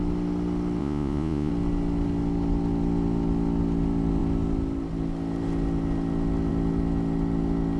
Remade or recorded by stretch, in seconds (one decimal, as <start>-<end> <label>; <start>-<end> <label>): 0.0-0.8 recorded; 0.8-1.5 remade; 1.5-7.8 recorded